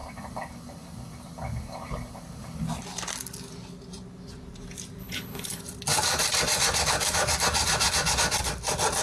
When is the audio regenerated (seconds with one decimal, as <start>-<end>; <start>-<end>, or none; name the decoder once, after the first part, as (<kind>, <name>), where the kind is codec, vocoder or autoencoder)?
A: 5.0-5.6 (codec, HILCodec)